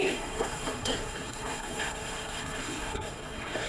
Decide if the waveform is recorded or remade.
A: remade